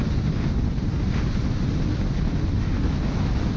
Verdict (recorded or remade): recorded